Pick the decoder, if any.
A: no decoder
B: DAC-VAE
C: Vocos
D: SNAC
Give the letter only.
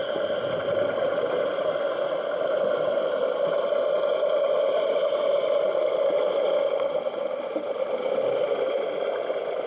A